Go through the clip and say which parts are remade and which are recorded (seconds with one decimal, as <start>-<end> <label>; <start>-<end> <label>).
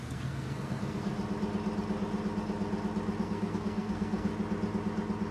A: 0.0-1.1 remade; 1.1-3.2 recorded; 3.2-4.3 remade; 4.3-5.3 recorded